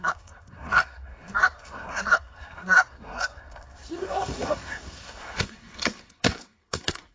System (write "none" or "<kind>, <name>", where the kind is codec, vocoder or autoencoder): codec, SNAC